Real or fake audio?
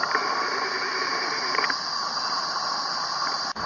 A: real